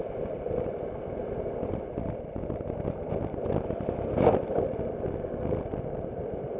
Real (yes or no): yes